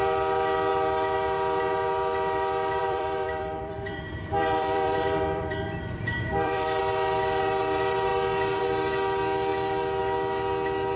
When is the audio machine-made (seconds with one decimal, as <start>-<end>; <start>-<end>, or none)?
2.8-6.8

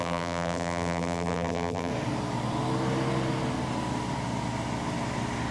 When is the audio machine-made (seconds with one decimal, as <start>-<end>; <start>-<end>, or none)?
0.0-1.9